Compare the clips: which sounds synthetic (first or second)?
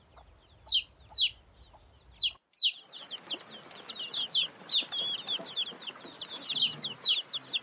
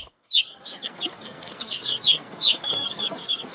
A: second